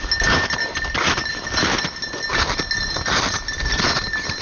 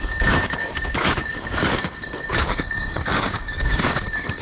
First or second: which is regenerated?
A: second